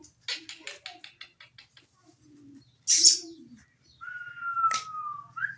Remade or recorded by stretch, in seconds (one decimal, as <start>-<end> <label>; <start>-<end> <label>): 0.0-5.6 recorded